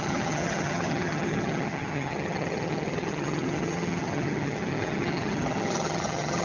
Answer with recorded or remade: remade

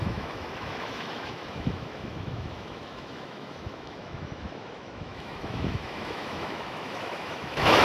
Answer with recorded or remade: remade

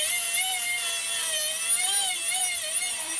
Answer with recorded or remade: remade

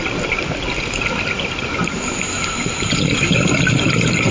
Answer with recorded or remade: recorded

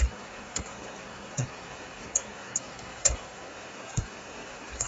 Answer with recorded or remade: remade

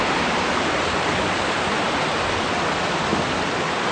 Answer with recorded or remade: recorded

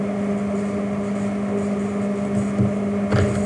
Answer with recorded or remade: recorded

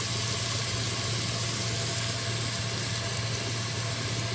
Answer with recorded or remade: recorded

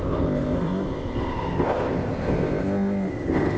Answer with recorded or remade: remade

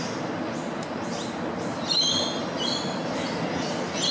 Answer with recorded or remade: recorded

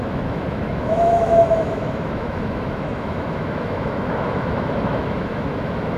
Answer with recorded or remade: remade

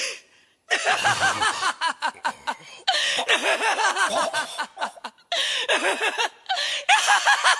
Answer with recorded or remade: remade